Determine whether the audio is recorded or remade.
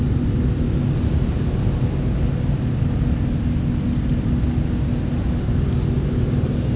recorded